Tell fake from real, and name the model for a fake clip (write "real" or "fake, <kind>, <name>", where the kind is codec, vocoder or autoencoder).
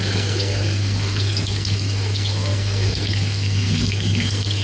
fake, codec, SNAC